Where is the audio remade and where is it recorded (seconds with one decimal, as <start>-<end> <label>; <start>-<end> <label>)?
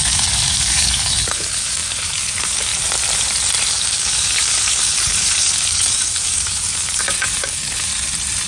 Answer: 0.0-2.7 remade; 2.7-3.7 recorded; 3.7-7.9 remade; 7.9-8.5 recorded